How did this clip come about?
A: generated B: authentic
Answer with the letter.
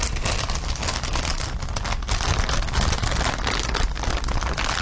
B